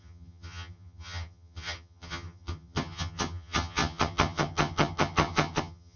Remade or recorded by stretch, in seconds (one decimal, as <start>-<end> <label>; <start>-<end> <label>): 0.0-6.0 remade